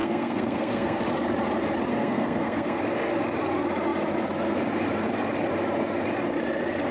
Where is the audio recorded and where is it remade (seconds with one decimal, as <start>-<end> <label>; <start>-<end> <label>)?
0.0-1.0 remade; 1.0-1.9 recorded; 1.9-2.8 remade; 2.8-6.9 recorded